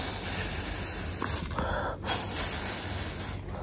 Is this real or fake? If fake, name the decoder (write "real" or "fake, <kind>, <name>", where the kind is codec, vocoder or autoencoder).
real